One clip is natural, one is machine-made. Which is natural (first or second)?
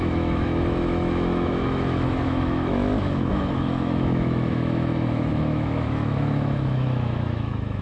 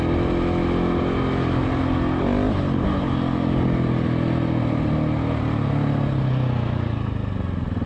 second